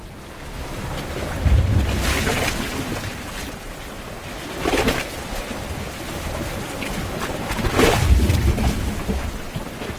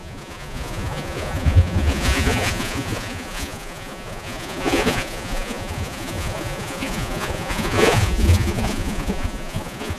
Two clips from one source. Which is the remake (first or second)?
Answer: second